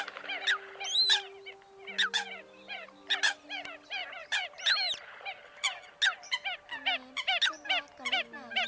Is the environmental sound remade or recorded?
recorded